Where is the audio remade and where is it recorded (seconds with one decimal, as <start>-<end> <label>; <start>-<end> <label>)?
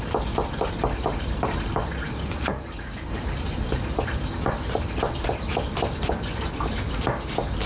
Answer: 0.0-2.5 remade; 2.5-3.1 recorded; 3.1-7.7 remade